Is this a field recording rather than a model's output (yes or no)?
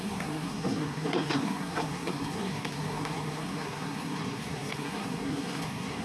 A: no